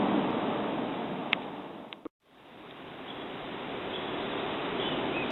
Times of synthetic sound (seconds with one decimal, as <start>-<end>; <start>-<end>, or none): none